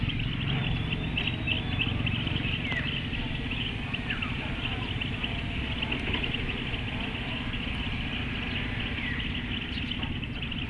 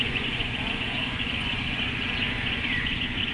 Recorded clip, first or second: first